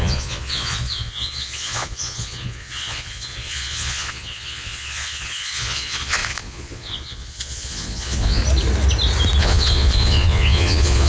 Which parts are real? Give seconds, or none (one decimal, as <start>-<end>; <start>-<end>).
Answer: 8.4-9.4